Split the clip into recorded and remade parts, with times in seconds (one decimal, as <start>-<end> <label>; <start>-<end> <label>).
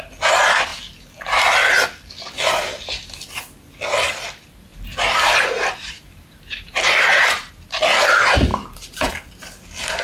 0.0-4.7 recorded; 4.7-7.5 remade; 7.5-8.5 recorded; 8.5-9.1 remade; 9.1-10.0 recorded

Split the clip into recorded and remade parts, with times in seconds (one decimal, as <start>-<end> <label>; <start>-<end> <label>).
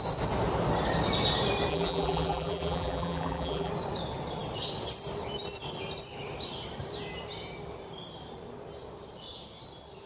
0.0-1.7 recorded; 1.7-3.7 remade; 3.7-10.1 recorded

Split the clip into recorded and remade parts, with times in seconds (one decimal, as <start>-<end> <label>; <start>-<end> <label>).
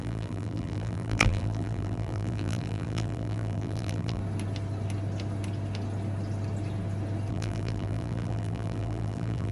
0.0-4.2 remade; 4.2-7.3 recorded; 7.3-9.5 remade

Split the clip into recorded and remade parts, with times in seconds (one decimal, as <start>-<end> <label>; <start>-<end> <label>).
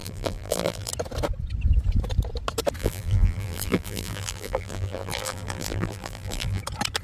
0.0-0.9 remade; 0.9-2.8 recorded; 2.8-6.6 remade; 6.6-7.0 recorded